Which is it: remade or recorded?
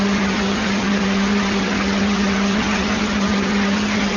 remade